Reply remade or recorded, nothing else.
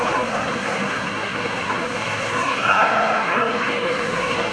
remade